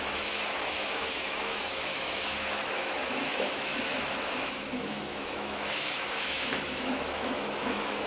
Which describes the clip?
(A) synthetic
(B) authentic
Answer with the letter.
A